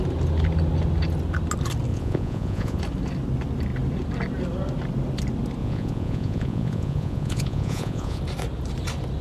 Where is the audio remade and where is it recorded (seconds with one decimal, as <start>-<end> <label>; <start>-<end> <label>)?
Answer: 0.0-1.9 recorded; 1.9-2.8 remade; 2.8-5.6 recorded; 5.6-8.2 remade; 8.2-9.2 recorded